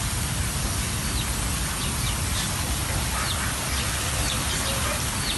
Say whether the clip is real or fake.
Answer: real